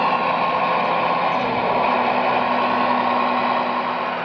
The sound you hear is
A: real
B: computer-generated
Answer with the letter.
A